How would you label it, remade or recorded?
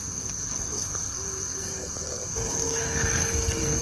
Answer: remade